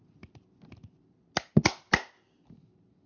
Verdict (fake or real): real